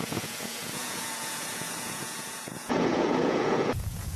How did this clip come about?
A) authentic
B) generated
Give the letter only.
B